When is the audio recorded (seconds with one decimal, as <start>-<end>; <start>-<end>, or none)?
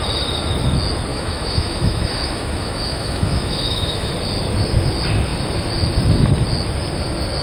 0.0-1.1; 4.1-7.4